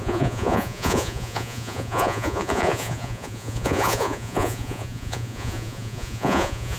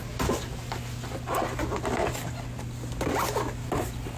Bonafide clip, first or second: second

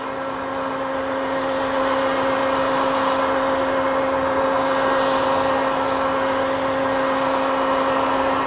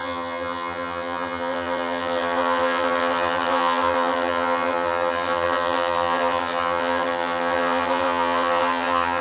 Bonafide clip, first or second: first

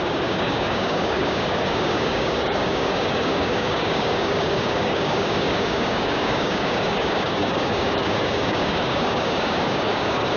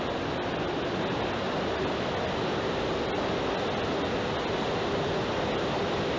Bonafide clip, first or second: second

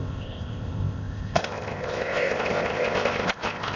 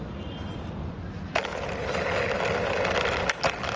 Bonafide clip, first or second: second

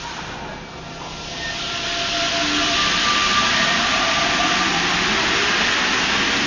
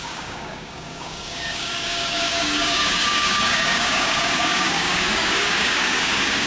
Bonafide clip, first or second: first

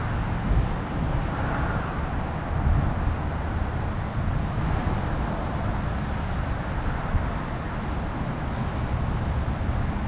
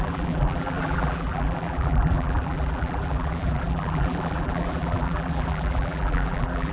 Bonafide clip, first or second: first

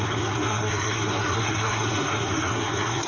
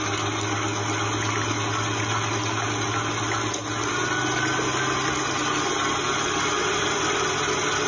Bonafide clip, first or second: second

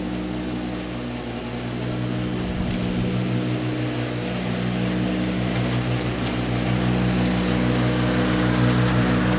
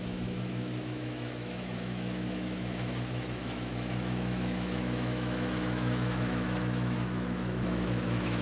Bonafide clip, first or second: first